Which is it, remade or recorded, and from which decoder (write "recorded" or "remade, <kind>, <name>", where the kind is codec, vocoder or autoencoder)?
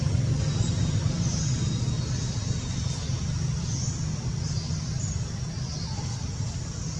recorded